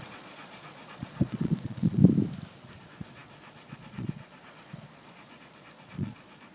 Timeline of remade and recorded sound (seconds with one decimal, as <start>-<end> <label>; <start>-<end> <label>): 0.0-2.0 remade; 2.0-2.8 recorded; 2.8-6.5 remade